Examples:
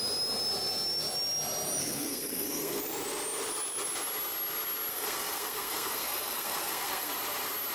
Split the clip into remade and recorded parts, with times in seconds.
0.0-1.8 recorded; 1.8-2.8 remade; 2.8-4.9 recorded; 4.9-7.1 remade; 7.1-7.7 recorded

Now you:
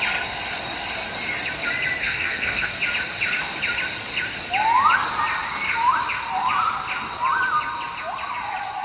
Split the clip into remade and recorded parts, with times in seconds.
0.0-2.0 recorded; 2.0-2.8 remade; 2.8-8.8 recorded